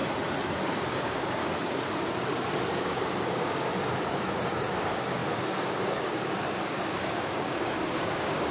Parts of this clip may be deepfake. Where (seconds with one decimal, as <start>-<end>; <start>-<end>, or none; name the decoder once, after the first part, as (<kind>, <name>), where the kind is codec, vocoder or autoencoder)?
0.6-1.4 (codec, DAC); 2.7-3.7; 4.7-8.5